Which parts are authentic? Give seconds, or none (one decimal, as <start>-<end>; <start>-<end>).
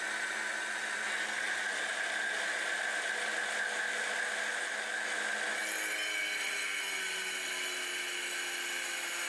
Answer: 0.0-9.3